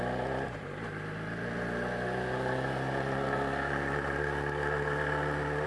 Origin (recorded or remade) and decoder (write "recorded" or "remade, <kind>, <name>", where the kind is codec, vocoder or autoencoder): recorded